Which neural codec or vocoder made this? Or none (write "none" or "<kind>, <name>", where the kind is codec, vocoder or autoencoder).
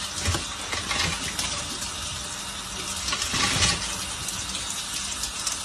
none